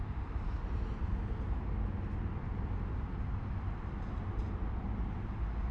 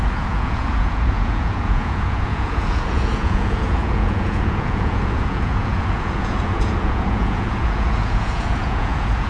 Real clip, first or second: first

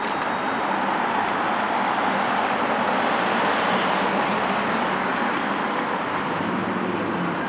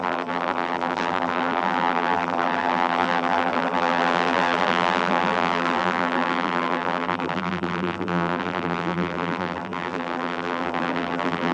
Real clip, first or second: first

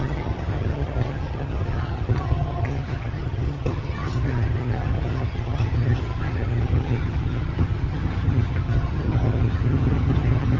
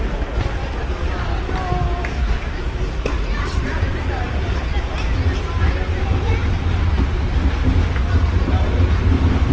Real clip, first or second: second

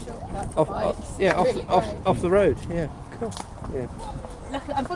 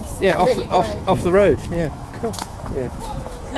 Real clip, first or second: first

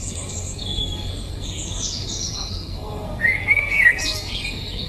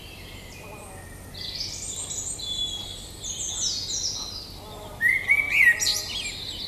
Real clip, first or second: second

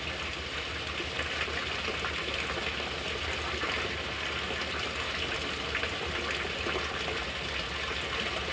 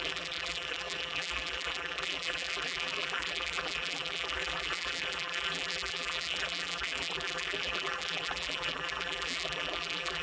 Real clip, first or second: first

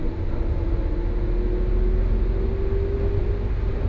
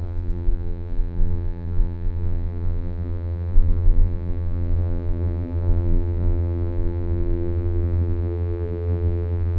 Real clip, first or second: first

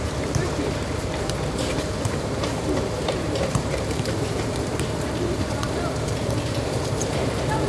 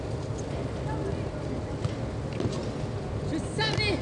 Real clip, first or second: second